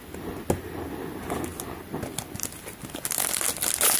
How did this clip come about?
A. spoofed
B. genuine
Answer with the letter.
B